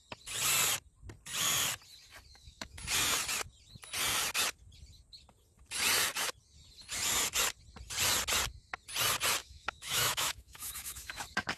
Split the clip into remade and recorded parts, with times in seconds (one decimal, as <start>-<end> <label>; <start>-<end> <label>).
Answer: 0.0-2.3 recorded; 2.3-2.8 remade; 2.8-9.4 recorded; 9.4-11.6 remade